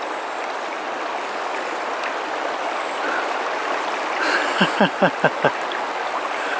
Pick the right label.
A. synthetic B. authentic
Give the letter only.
B